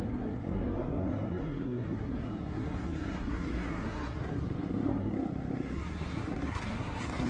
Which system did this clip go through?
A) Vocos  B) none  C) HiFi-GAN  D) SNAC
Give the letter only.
D